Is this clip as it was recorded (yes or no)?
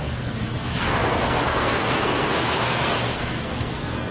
no